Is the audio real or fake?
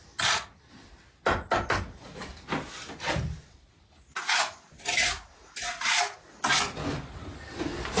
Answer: real